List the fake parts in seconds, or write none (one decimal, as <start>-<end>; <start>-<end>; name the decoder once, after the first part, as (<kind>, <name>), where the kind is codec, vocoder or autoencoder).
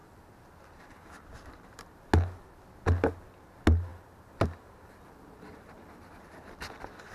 3.9-6.2 (vocoder, BigVGAN v2)